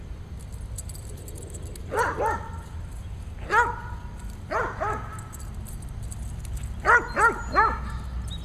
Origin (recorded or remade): recorded